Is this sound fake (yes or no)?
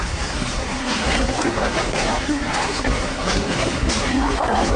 yes